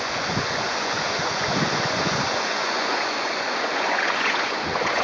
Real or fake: fake